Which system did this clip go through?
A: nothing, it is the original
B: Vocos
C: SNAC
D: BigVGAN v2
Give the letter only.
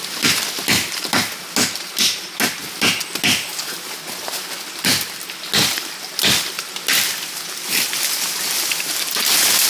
A